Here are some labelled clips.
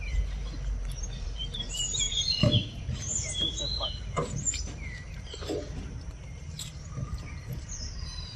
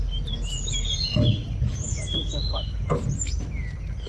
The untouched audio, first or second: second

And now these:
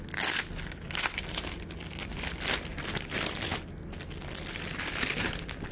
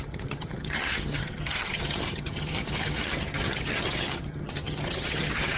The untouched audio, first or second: first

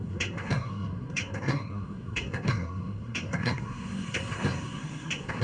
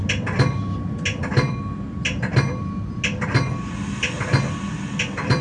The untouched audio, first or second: second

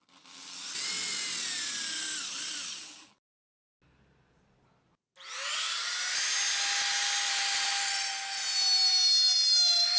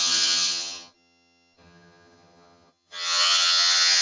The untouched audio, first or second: first